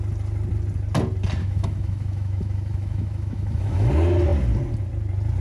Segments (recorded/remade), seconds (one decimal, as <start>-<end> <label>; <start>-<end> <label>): 0.0-1.4 recorded; 1.4-3.9 remade; 3.9-5.4 recorded